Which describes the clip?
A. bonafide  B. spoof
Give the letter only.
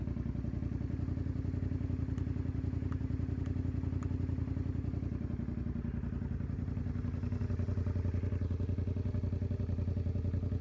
A